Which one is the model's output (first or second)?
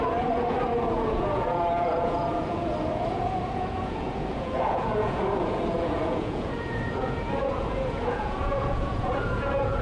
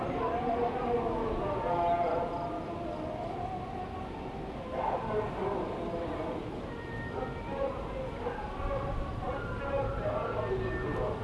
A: first